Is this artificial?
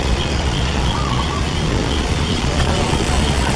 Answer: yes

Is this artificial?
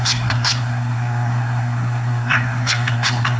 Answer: yes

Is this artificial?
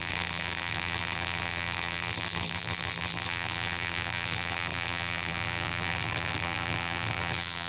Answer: yes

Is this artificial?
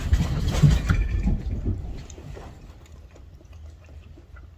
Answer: yes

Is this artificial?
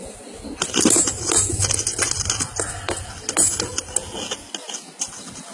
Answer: no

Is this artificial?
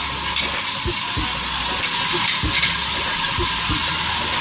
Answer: no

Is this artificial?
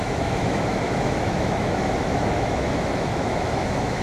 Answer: yes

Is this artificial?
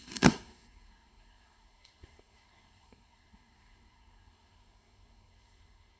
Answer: yes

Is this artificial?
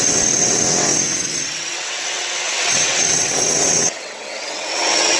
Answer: yes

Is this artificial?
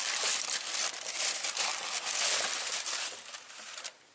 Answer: no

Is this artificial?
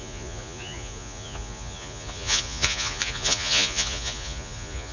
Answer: yes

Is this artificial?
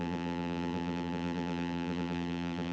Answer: yes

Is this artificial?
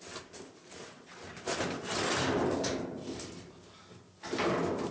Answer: no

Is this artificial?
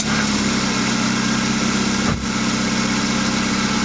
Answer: no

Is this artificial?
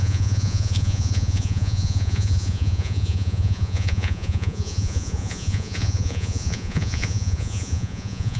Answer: yes